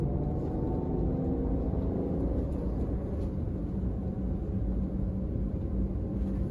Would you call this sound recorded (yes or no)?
yes